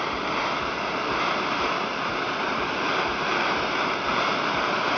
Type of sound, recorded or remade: remade